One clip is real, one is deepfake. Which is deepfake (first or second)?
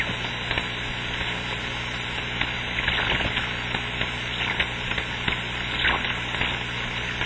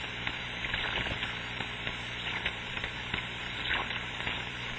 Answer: second